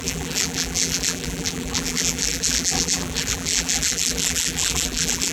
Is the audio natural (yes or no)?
no